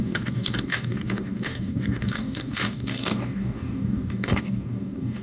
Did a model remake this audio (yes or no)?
yes